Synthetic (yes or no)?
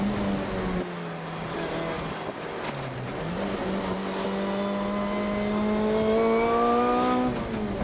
no